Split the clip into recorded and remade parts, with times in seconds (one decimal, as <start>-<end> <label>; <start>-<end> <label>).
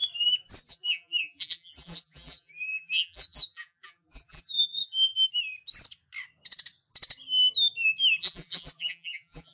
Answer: 0.0-0.7 recorded; 0.7-5.1 remade; 5.1-8.2 recorded; 8.2-9.5 remade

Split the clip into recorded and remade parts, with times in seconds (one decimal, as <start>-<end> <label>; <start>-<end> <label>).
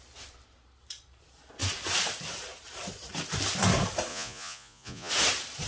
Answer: 0.0-4.1 recorded; 4.1-5.1 remade; 5.1-5.7 recorded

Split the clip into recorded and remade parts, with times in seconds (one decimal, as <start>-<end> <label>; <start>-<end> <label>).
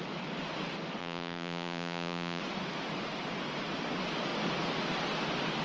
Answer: 0.0-1.0 recorded; 1.0-2.4 remade; 2.4-5.6 recorded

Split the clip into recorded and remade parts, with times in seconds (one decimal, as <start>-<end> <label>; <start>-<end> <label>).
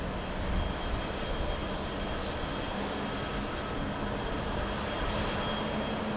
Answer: 0.0-6.2 recorded